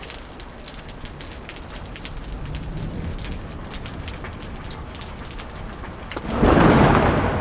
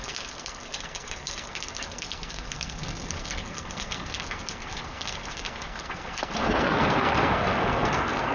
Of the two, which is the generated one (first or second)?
second